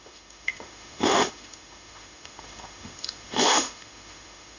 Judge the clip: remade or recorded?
remade